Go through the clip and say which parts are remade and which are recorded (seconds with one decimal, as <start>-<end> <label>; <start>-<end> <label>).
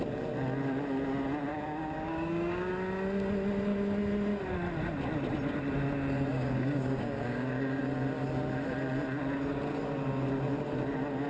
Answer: 0.0-1.5 recorded; 1.5-2.7 remade; 2.7-6.3 recorded; 6.3-7.8 remade; 7.8-11.3 recorded